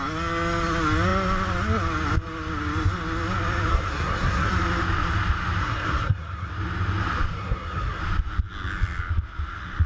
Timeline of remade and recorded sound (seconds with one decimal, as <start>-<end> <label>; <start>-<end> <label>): 0.0-3.7 recorded; 3.7-4.5 remade; 4.5-5.6 recorded; 5.6-6.5 remade; 6.5-7.3 recorded; 7.3-8.0 remade; 8.0-9.9 recorded